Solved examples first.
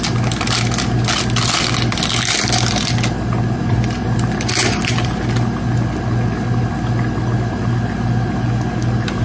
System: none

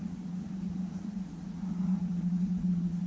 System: vocoder, Vocos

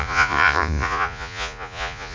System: vocoder, Vocos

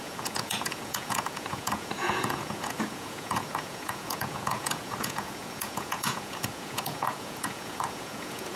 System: vocoder, Vocos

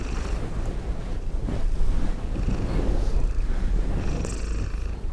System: none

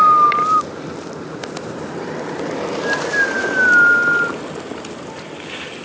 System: none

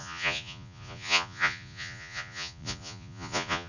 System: vocoder, Vocos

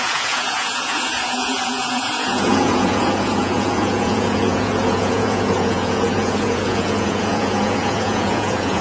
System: vocoder, Vocos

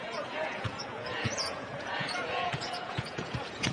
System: vocoder, Vocos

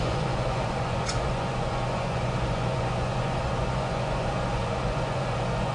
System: vocoder, Vocos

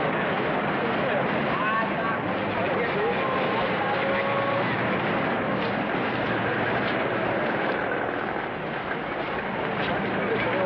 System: none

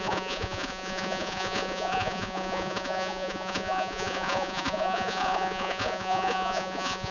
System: vocoder, Vocos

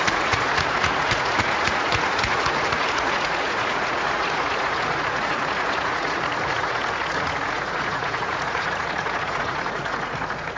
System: vocoder, Vocos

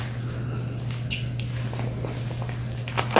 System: none